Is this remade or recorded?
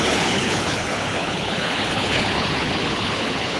remade